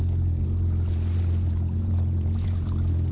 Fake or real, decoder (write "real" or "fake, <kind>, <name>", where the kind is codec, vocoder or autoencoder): real